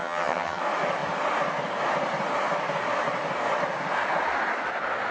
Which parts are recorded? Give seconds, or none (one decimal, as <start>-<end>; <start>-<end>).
0.6-5.1